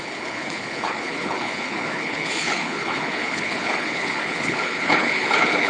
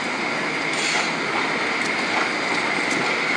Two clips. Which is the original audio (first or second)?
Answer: second